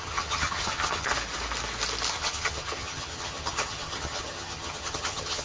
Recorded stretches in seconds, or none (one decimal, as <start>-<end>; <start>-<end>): 1.1-2.1